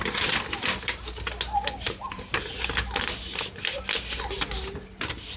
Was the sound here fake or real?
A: real